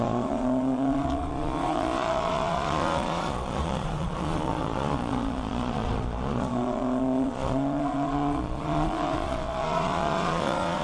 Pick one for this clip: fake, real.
fake